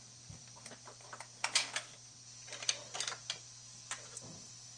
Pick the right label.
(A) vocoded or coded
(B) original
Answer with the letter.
B